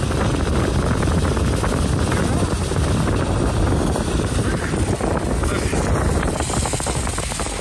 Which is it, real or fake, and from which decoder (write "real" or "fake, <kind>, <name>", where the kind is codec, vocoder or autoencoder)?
real